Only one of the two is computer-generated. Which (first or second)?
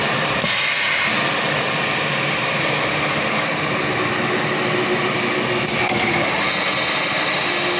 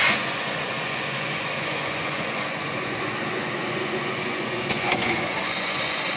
second